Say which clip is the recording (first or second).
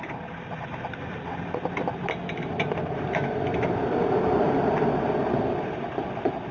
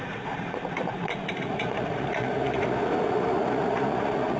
first